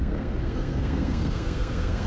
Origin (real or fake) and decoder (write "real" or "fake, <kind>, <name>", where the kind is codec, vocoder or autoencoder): fake, codec, SNAC